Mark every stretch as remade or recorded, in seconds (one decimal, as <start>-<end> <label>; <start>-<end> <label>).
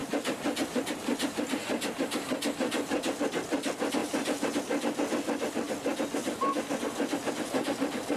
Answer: 0.0-2.3 remade; 2.3-4.0 recorded; 4.0-4.6 remade; 4.6-8.2 recorded